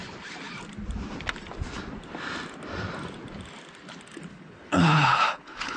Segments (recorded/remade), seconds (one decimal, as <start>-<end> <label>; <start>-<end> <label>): 0.0-4.3 recorded; 4.3-5.8 remade